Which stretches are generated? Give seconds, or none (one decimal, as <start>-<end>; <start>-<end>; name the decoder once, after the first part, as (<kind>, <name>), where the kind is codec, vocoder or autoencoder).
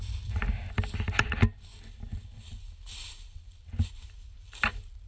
none